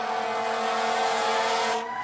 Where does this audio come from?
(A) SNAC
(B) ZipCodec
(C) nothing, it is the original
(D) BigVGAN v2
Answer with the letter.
C